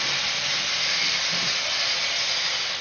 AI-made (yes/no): no